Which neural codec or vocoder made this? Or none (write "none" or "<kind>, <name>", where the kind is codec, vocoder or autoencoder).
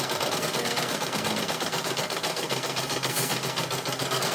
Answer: codec, SNAC